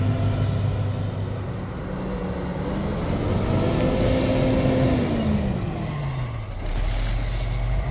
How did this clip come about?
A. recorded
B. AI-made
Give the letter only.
A